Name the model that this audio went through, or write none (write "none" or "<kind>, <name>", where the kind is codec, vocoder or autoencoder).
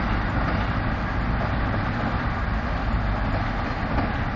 none